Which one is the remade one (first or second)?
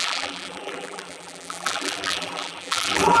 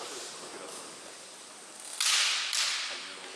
first